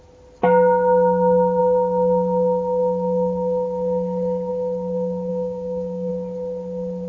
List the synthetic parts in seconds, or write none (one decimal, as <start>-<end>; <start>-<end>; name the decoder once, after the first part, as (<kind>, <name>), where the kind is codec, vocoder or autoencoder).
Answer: 5.3-6.1 (codec, DAC)